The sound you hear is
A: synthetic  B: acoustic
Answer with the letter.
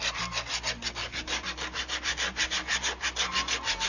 B